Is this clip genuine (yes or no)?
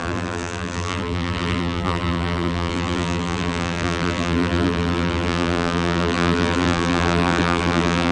no